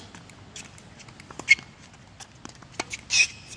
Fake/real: real